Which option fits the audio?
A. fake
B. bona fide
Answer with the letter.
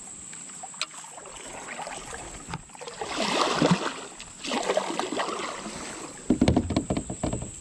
B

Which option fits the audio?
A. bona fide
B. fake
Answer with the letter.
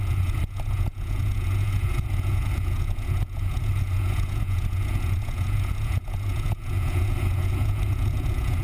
B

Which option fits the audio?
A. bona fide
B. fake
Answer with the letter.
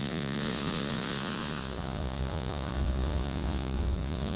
B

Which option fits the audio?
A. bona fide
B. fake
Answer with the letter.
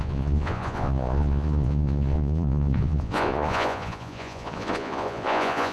B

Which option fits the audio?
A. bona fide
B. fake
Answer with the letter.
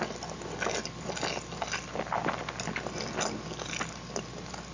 A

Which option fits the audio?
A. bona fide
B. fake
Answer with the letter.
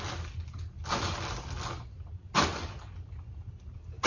A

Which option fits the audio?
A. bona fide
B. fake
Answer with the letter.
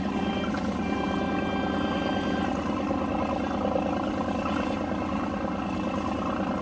A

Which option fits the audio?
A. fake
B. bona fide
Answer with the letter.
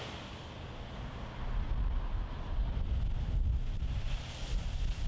B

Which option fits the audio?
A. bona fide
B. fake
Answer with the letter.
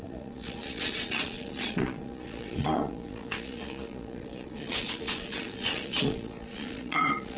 B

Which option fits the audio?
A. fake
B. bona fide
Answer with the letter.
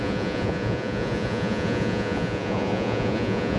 A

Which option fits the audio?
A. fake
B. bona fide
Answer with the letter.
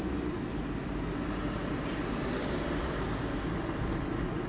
B